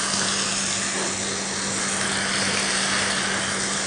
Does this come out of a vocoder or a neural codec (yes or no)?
no